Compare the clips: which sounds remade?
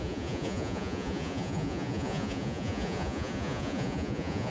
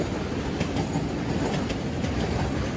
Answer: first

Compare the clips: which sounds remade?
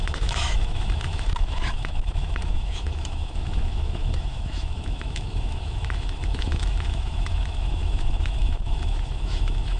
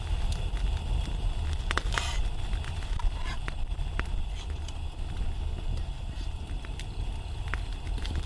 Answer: first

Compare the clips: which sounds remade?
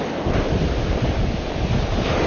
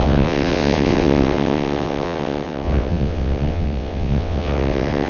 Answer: second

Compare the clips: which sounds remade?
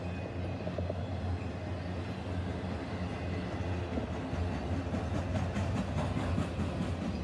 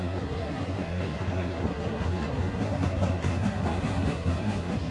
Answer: second